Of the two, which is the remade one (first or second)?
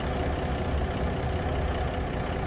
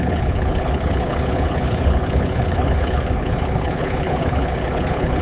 second